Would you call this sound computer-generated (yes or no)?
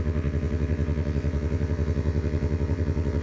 yes